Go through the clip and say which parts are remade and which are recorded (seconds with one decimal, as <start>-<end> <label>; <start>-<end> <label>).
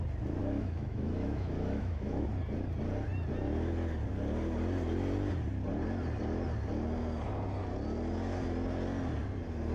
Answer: 0.0-0.4 recorded; 0.4-2.3 remade; 2.3-9.7 recorded